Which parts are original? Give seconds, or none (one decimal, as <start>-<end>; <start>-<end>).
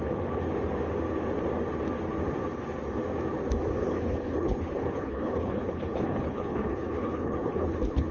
0.0-3.8